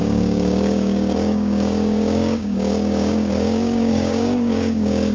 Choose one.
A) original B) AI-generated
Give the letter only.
B